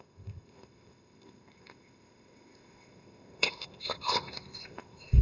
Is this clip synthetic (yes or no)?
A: yes